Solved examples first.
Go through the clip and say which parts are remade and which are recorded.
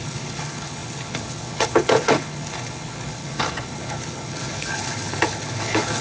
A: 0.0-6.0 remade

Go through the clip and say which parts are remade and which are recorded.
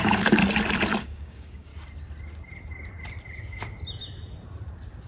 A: 0.0-0.4 remade; 0.4-1.0 recorded; 1.0-1.7 remade; 1.7-5.1 recorded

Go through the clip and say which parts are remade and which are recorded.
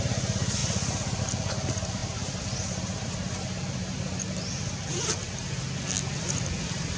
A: 0.0-7.0 recorded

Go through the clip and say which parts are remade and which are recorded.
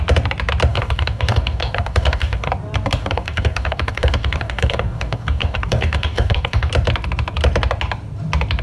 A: 0.0-0.7 recorded; 0.7-2.5 remade; 2.5-3.0 recorded; 3.0-6.7 remade; 6.7-8.6 recorded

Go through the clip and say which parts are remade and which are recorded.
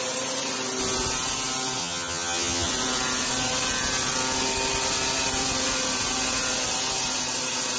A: 0.0-1.8 recorded; 1.8-2.7 remade; 2.7-7.8 recorded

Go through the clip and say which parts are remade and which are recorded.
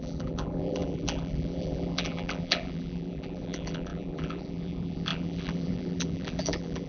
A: 0.0-6.9 remade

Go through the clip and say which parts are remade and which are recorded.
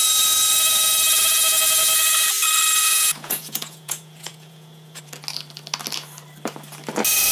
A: 0.0-2.8 recorded; 2.8-5.0 remade; 5.0-7.3 recorded